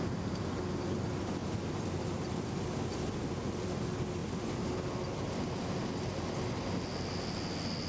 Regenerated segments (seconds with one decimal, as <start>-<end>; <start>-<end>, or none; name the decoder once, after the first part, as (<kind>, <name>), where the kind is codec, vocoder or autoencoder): none